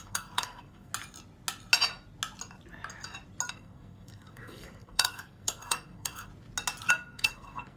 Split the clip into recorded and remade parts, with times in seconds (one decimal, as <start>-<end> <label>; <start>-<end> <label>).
0.0-0.9 remade; 0.9-3.5 recorded; 3.5-6.3 remade; 6.3-6.9 recorded; 6.9-7.8 remade